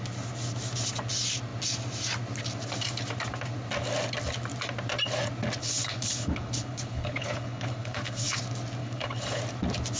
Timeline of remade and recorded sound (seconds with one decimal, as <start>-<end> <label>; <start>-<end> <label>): 0.0-5.6 recorded; 5.6-8.4 remade; 8.4-8.8 recorded; 8.8-9.4 remade; 9.4-10.0 recorded

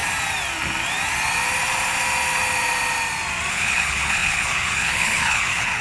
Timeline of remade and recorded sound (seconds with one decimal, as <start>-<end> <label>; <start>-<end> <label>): 0.0-3.5 recorded; 3.5-5.8 remade

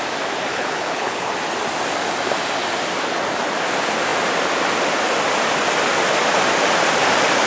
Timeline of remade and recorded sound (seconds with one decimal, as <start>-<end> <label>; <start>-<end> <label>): 0.0-0.5 recorded; 0.5-1.3 remade; 1.3-7.5 recorded